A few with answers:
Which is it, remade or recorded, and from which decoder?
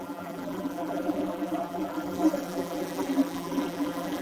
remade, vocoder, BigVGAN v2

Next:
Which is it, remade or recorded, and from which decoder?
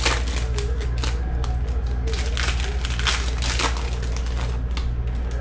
recorded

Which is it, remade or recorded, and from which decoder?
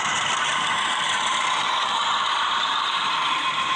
remade, vocoder, BigVGAN v2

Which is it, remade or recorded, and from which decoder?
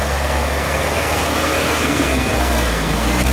remade, codec, SNAC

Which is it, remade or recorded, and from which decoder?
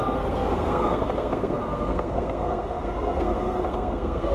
remade, codec, SNAC